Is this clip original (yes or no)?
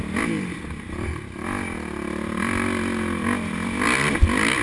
yes